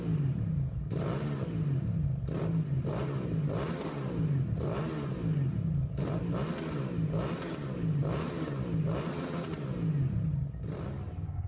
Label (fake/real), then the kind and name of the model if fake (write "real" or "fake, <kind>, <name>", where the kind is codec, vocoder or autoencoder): real